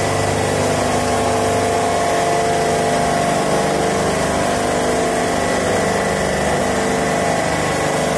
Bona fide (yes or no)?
yes